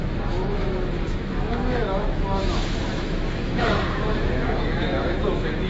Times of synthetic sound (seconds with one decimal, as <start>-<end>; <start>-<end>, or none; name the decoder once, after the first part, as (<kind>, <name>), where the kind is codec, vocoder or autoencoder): 0.0-5.7 (autoencoder, DAC-VAE)